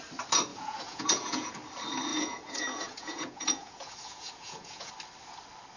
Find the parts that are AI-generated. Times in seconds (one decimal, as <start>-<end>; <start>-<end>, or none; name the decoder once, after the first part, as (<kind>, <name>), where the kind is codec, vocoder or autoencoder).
0.5-1.5 (vocoder, Vocos); 2.1-4.9